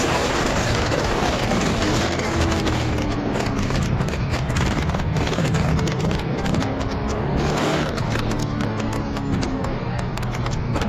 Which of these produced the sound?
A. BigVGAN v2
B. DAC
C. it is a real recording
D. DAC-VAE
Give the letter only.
B